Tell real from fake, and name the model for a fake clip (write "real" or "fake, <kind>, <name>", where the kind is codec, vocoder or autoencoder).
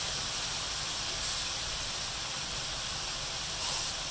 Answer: real